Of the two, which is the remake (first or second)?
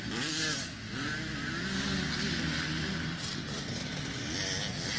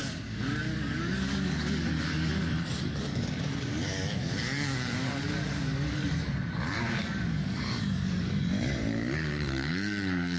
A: second